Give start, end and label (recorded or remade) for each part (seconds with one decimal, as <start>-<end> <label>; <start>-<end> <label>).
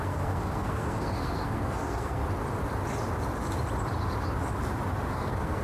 0.0-2.2 remade; 2.2-5.1 recorded; 5.1-5.6 remade